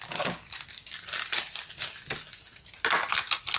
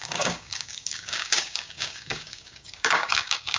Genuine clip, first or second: first